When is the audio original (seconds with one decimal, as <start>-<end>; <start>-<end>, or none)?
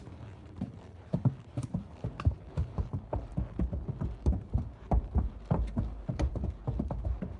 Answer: 3.3-4.2